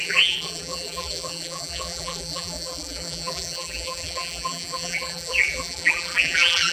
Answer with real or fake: fake